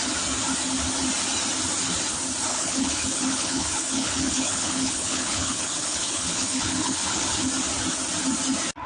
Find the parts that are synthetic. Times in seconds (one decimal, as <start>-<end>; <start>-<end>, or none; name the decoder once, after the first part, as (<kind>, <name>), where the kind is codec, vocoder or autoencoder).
2.5-7.5 (codec, HILCodec)